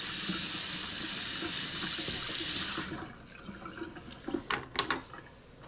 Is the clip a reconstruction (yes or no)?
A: no